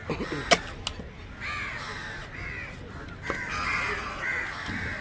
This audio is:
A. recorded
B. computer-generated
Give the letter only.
A